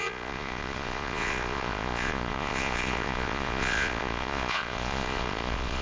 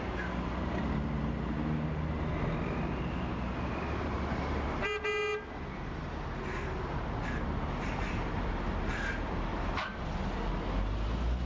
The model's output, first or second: first